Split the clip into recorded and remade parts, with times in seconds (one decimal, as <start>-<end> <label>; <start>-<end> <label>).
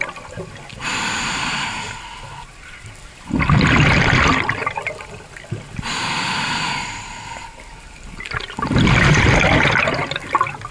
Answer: 0.0-10.7 recorded